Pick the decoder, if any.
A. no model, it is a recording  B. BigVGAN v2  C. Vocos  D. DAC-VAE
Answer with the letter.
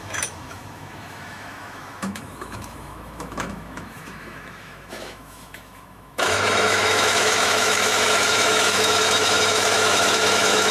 D